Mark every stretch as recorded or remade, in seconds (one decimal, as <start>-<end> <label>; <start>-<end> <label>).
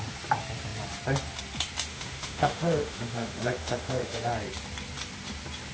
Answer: 0.0-1.9 recorded; 1.9-4.3 remade; 4.3-5.7 recorded